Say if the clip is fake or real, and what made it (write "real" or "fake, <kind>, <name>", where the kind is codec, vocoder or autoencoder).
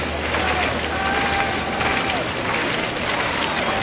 real